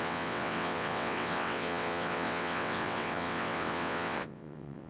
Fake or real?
fake